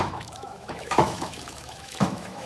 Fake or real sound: fake